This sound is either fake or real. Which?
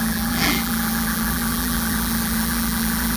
fake